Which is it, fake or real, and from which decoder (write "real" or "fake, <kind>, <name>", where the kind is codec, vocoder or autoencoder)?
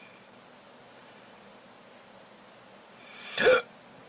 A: real